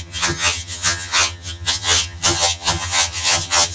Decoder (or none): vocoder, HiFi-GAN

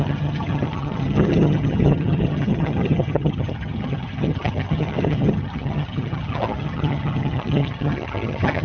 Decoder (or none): vocoder, HiFi-GAN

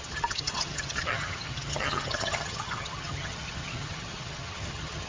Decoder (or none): vocoder, HiFi-GAN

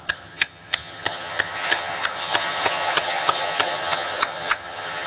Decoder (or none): vocoder, HiFi-GAN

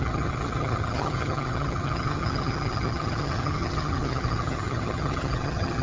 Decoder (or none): vocoder, HiFi-GAN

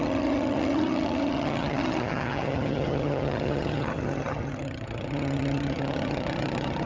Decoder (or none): vocoder, HiFi-GAN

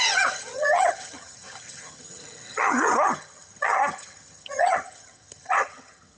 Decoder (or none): vocoder, HiFi-GAN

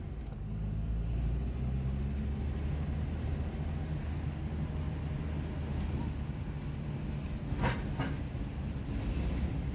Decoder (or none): none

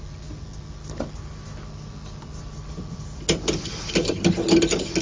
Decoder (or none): none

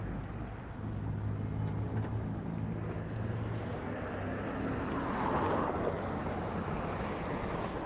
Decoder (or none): none